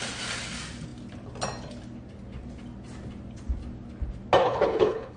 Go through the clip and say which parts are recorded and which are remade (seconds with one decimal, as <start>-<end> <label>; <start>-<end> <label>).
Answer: 0.0-4.4 recorded; 4.4-5.2 remade